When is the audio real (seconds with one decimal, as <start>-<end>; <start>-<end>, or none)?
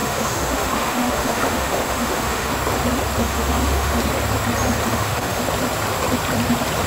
2.5-3.2; 4.0-4.9; 5.4-6.9